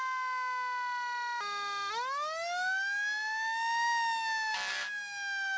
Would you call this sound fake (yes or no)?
no